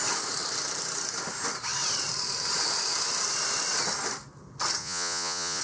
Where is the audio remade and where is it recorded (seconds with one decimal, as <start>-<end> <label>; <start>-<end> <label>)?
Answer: 0.0-4.8 recorded; 4.8-5.6 remade